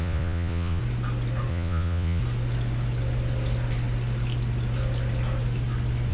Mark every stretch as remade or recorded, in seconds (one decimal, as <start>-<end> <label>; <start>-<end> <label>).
0.0-0.8 remade; 0.8-1.5 recorded; 1.5-2.2 remade; 2.2-6.1 recorded